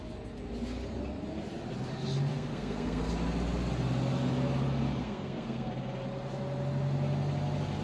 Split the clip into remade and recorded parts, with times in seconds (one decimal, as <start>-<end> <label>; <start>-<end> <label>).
0.0-2.3 recorded; 2.3-3.1 remade; 3.1-5.0 recorded; 5.0-5.7 remade; 5.7-7.8 recorded